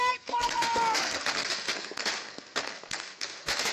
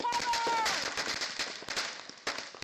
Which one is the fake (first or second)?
first